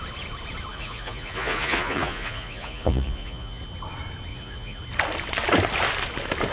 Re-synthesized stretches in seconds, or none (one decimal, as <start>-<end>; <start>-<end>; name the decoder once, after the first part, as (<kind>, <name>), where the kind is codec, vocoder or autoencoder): 0.7-3.6 (vocoder, Vocos); 4.3-4.8